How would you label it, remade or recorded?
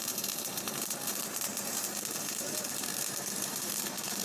remade